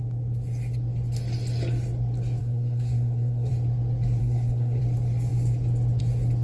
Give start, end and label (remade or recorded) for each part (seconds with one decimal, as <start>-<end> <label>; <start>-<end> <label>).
0.0-2.4 recorded; 2.4-3.5 remade; 3.5-4.2 recorded; 4.2-4.8 remade; 4.8-6.4 recorded